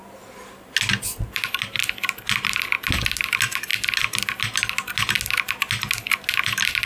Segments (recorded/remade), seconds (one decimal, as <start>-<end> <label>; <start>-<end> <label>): 0.0-6.9 recorded